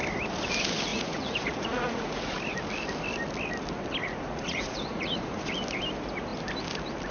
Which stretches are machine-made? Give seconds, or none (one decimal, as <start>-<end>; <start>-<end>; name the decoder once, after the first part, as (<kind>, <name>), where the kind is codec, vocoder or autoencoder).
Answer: 0.9-2.4 (vocoder, Vocos); 4.0-5.5